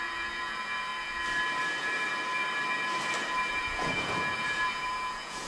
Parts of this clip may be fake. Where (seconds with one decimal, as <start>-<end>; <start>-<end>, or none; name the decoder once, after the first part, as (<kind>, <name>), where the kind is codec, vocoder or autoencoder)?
0.0-0.9 (vocoder, Vocos); 3.5-5.5